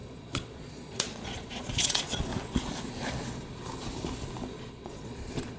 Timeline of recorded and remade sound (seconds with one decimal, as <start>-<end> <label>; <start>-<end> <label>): 0.0-2.3 remade; 2.3-4.7 recorded; 4.7-5.6 remade